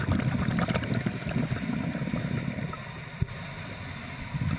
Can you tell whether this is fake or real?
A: fake